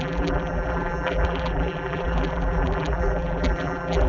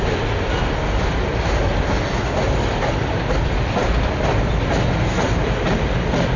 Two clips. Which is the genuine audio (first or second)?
second